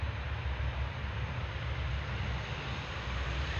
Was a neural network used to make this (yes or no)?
no